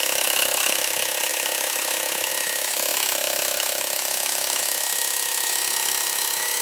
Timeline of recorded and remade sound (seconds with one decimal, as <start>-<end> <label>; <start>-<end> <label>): 0.0-6.6 remade